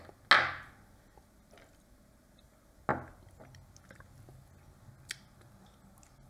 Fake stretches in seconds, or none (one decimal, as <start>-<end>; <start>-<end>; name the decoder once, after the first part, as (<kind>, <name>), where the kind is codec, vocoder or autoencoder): none

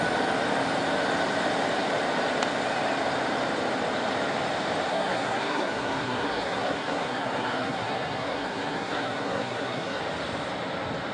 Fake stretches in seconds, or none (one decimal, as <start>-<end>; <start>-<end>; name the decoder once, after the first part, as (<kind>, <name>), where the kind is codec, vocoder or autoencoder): 4.9-10.0 (codec, SNAC)

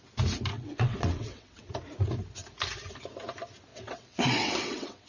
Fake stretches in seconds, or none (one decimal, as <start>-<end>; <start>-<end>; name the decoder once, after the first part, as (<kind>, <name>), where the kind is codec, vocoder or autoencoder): 0.5-1.7 (vocoder, WaveNeXt); 3.7-5.1

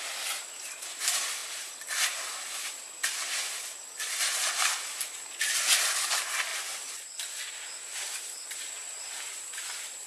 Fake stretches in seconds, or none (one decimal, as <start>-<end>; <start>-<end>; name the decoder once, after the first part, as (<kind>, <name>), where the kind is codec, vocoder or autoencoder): none

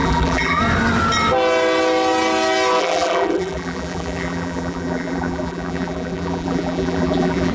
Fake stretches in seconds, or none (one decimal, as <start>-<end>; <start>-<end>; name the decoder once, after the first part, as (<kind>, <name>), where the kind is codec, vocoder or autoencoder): 0.0-0.6 (vocoder, BigVGAN v2); 2.8-7.5